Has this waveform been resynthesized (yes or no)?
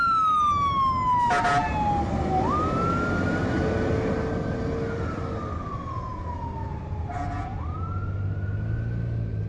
no